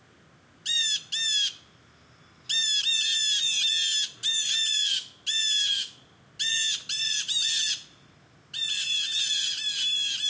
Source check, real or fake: real